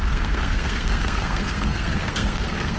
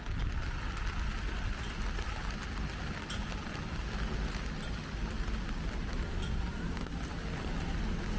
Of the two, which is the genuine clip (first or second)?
second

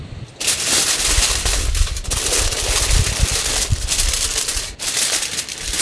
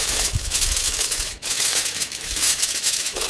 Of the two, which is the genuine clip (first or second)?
first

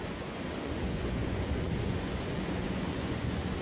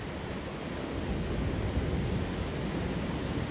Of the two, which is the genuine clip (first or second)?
second